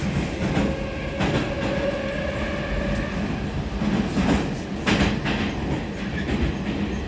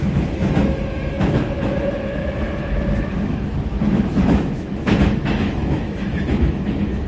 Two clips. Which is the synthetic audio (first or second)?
second